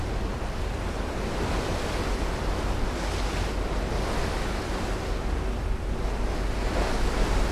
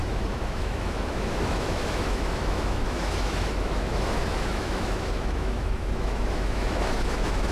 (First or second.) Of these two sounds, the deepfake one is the second